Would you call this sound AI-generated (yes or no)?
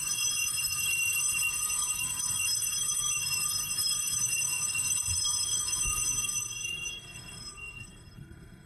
yes